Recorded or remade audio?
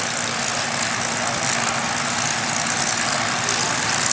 recorded